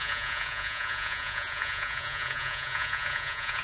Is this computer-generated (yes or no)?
yes